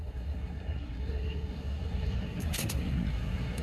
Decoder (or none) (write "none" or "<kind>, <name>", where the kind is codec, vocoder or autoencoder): codec, SNAC